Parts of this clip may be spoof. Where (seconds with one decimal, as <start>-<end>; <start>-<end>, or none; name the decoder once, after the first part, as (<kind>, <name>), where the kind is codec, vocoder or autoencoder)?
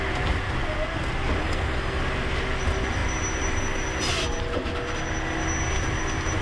1.4-2.0 (codec, SNAC)